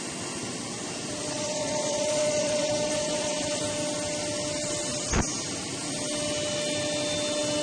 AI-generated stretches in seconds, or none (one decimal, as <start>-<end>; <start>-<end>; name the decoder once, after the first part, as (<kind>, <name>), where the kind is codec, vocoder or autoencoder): 1.2-3.6 (vocoder, Vocos)